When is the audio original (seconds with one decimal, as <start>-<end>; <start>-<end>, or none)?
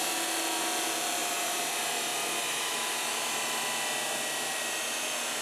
0.0-2.4; 3.3-5.4